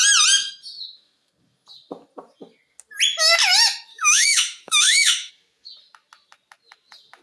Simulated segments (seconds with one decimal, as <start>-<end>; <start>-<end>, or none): 3.9-5.3

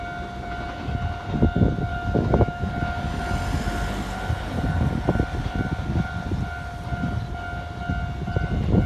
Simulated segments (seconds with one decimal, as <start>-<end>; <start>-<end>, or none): 1.9-2.7

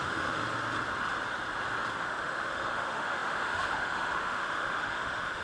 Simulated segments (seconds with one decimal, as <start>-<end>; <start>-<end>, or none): 0.0-0.4; 2.0-5.4

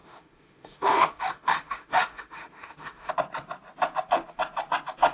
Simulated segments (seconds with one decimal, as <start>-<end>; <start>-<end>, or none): 0.0-3.1

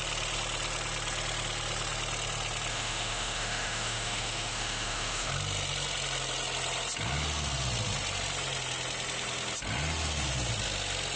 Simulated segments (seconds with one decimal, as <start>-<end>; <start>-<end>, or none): 2.7-5.3

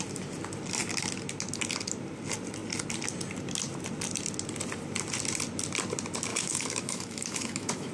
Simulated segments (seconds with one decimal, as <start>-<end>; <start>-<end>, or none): 6.3-7.9

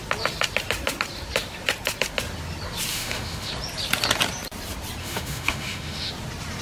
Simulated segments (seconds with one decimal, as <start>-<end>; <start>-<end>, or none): 2.9-3.5; 5.0-6.1